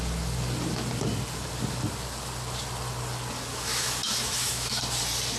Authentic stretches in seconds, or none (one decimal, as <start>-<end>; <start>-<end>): 0.0-3.5; 4.7-5.4